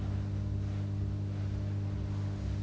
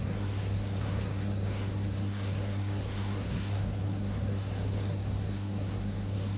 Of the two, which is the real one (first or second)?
first